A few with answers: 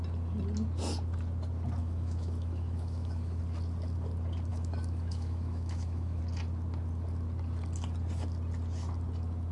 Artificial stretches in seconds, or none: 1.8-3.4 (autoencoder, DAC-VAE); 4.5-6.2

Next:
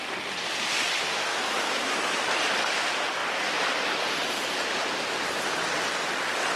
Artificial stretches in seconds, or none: 1.3-2.2 (autoencoder, DAC-VAE)

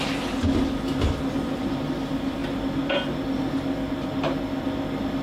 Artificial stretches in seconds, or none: none

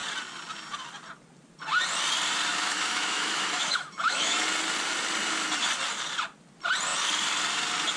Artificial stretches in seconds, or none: 2.5-4.4 (autoencoder, DAC-VAE)

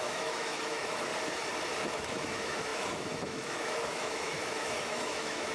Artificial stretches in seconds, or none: 0.0-1.1 (autoencoder, DAC-VAE); 1.8-5.5